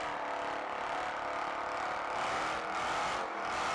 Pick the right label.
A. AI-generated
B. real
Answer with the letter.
B